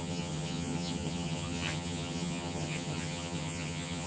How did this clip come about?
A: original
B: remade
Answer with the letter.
B